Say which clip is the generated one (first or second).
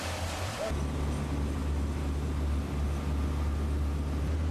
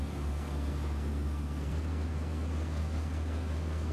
second